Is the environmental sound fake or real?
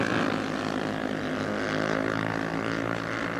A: real